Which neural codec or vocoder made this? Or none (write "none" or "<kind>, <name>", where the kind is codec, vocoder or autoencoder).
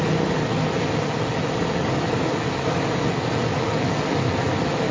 none